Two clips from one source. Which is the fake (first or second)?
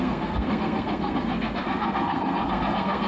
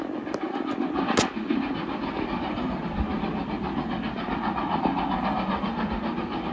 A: first